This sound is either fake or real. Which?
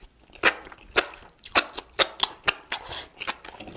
real